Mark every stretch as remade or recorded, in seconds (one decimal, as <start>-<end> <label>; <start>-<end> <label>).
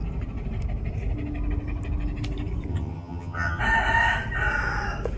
0.0-2.7 recorded; 2.7-3.6 remade; 3.6-5.2 recorded